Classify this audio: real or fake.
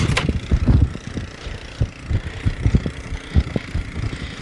real